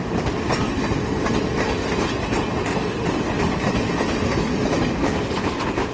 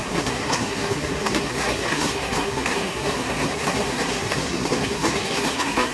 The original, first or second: first